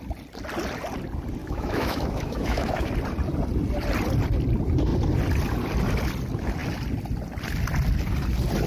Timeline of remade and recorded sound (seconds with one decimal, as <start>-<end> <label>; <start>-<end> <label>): 0.0-1.4 recorded; 1.4-2.9 remade; 2.9-8.7 recorded